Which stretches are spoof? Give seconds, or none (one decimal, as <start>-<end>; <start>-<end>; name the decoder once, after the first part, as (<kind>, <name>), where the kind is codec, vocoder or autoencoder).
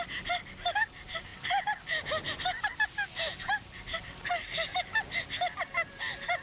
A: none